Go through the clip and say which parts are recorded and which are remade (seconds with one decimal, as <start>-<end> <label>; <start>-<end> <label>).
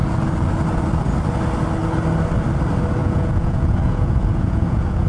0.0-3.0 recorded; 3.0-5.1 remade